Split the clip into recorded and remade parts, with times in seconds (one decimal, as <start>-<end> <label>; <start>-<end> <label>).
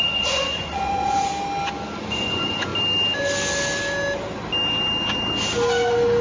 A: 0.0-1.3 remade; 1.3-2.1 recorded; 2.1-2.7 remade; 2.7-6.2 recorded